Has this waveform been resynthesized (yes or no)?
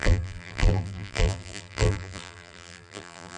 yes